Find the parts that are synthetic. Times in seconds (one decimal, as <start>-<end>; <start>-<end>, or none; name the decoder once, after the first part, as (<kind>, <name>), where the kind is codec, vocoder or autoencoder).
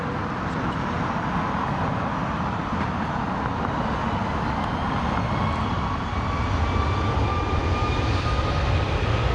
none